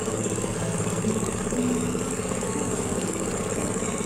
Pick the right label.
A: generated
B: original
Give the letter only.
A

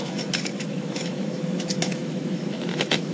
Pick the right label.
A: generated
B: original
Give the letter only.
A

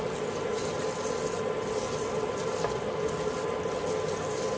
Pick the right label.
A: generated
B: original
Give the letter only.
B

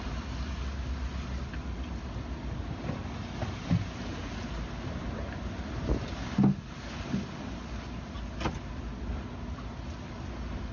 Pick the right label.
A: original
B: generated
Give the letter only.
A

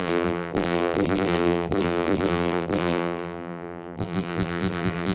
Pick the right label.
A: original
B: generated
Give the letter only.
B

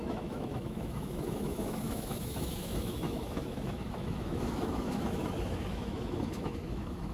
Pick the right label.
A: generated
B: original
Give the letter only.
A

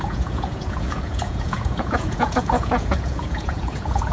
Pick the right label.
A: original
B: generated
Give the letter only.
B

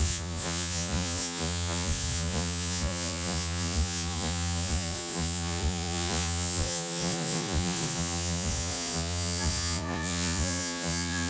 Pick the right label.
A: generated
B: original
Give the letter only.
A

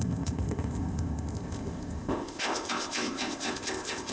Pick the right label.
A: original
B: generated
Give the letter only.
B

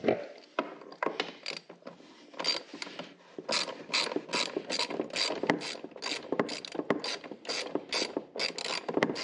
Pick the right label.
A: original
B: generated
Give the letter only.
A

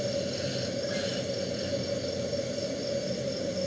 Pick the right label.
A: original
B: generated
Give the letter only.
A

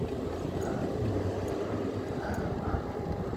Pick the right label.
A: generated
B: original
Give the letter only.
B